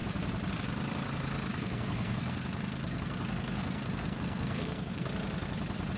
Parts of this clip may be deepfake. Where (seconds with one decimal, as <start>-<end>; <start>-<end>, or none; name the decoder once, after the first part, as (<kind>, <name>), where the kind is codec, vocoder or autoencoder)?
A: 1.5-5.1 (codec, SNAC)